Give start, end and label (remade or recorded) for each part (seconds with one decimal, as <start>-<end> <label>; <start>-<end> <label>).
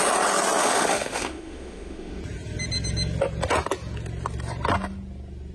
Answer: 0.0-0.6 recorded; 0.6-2.2 remade; 2.2-5.5 recorded